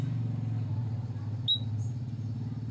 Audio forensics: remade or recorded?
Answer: recorded